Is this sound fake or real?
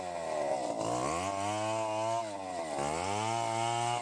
real